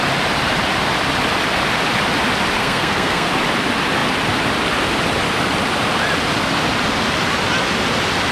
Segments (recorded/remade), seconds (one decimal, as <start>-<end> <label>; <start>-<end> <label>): 0.0-2.6 recorded; 2.6-3.3 remade; 3.3-8.3 recorded